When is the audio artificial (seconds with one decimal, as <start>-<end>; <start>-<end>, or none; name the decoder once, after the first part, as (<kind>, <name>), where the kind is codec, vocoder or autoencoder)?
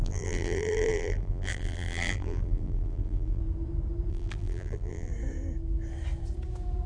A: 0.0-3.4 (vocoder, BigVGAN v2); 4.1-5.1